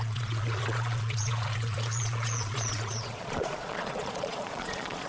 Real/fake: fake